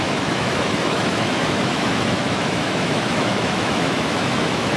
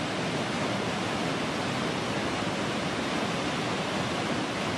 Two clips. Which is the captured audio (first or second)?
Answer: second